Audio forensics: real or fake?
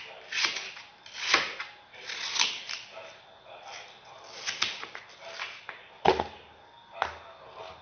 real